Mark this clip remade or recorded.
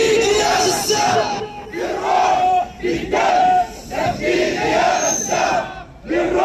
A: remade